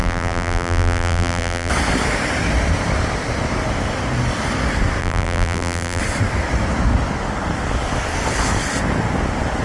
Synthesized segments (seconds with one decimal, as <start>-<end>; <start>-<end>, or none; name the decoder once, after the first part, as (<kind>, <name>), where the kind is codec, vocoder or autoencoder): 0.0-1.7 (vocoder, BigVGAN v2); 5.0-6.0